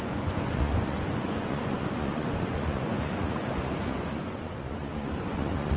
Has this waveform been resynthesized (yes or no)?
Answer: yes